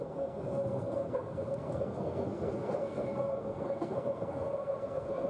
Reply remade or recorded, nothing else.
remade